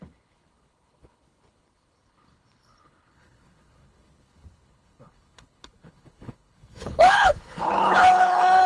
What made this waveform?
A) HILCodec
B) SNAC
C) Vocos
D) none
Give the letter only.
A